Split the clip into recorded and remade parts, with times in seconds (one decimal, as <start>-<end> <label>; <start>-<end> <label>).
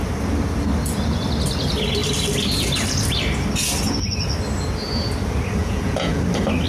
0.0-5.6 recorded; 5.6-6.2 remade; 6.2-6.7 recorded